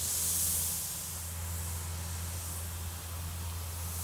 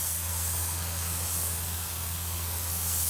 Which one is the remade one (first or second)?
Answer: second